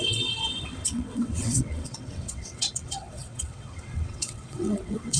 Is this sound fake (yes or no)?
yes